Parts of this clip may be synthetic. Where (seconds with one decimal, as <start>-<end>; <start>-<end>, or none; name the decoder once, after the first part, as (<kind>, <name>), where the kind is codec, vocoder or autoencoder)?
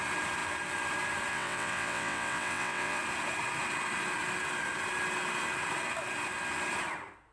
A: 1.3-3.0 (vocoder, WaveNeXt)